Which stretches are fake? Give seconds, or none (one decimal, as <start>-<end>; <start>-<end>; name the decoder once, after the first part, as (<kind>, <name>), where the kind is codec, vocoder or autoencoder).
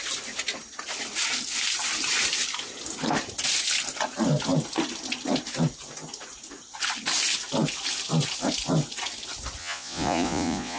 9.6-10.8 (vocoder, Vocos)